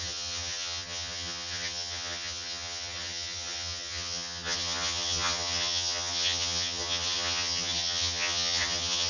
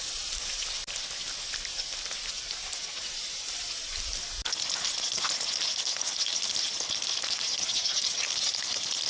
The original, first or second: second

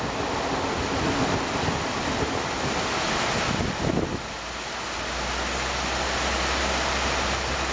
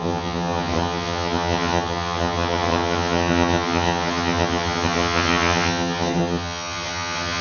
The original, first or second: first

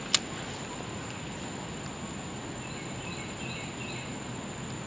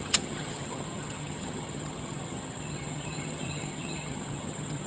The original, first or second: first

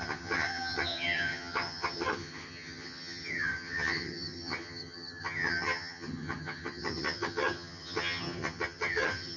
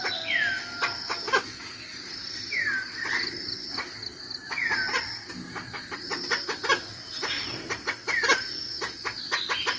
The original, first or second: second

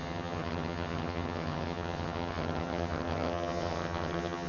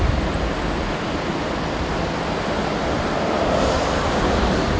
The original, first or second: second